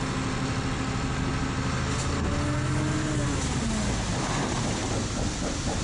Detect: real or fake real